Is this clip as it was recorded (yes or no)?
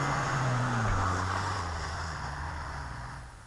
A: no